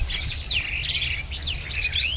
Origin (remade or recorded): recorded